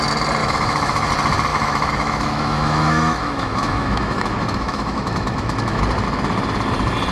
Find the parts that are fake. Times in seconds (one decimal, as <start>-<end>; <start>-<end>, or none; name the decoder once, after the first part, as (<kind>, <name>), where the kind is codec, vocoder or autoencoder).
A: 0.4-1.1 (autoencoder, DAC-VAE); 1.5-5.8